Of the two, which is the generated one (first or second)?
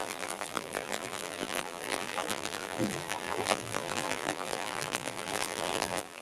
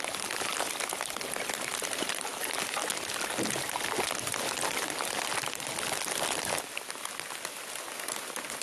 first